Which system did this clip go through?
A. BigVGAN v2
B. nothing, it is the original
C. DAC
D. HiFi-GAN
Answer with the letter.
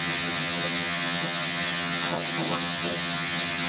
D